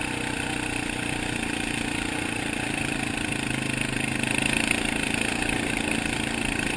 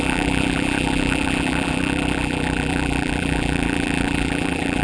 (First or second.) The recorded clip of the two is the first